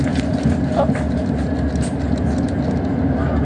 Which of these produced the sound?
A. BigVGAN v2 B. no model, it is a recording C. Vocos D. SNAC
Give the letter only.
B